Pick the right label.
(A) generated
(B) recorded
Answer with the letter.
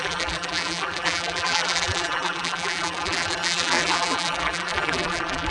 A